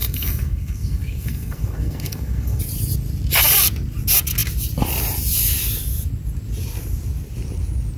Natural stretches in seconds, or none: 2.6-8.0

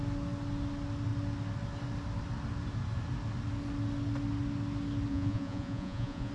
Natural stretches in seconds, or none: 0.0-5.1

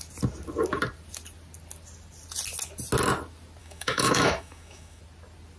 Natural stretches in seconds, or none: 0.0-3.6; 5.0-5.6

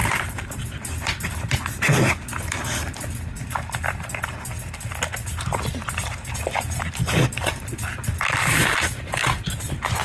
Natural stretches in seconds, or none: 0.7-9.2